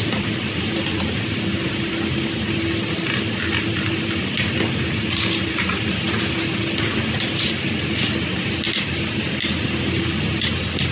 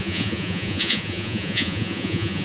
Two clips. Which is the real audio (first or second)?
first